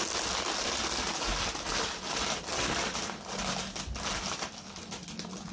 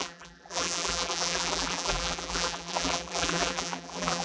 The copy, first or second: second